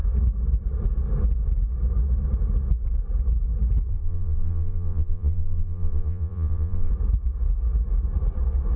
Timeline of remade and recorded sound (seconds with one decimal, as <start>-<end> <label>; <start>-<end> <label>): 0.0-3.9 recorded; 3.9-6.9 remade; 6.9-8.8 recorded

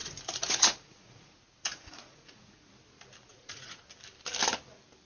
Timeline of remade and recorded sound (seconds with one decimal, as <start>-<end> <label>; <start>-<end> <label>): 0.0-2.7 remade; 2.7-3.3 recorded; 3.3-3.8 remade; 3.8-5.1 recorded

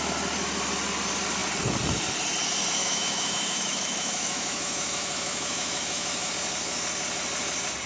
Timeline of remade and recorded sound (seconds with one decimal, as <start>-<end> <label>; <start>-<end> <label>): 0.0-2.8 recorded; 2.8-6.3 remade; 6.3-7.9 recorded